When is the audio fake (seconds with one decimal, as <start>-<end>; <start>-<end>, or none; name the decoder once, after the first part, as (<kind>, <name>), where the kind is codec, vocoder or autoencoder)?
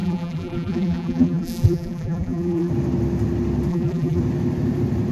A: 0.0-2.7 (vocoder, BigVGAN v2); 3.7-4.2